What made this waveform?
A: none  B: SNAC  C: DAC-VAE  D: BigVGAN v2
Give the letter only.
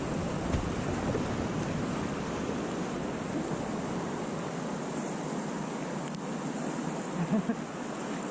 A